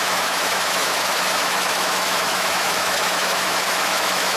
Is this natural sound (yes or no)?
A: no